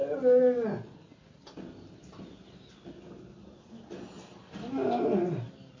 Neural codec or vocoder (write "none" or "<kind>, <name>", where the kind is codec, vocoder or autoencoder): none